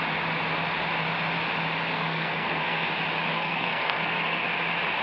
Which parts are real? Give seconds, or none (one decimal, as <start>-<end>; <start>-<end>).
0.0-1.9; 2.9-3.3; 4.5-5.0